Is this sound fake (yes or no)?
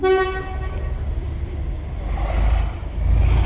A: no